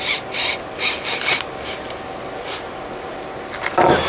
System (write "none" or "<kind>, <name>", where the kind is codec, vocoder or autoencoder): none